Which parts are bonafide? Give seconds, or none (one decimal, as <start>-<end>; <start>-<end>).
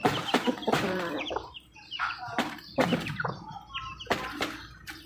3.1-5.1